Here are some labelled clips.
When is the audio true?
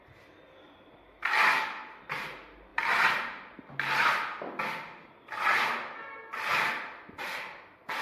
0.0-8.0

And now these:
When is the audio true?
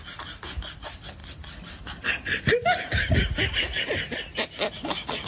0.0-5.3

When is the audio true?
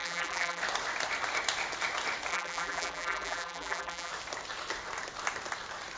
0.6-2.3; 4.1-6.0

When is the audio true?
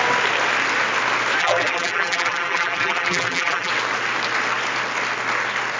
0.0-1.4; 3.7-5.8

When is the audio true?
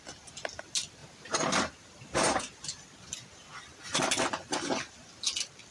0.0-1.0; 3.6-5.7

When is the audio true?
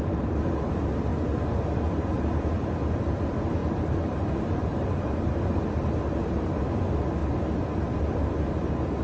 0.0-3.6; 6.8-9.0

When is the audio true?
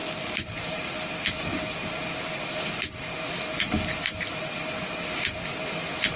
none